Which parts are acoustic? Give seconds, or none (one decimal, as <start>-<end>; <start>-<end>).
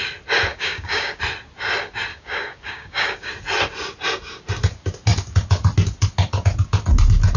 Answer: 0.0-0.5; 1.2-2.1; 3.3-7.4